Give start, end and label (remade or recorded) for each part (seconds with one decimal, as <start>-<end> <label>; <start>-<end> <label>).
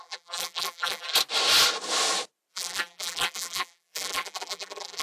0.0-1.1 remade; 1.1-2.5 recorded; 2.5-5.0 remade